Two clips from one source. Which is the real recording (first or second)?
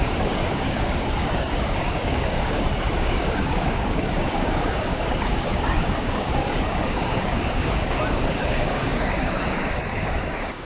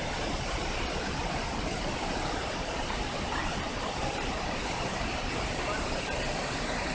second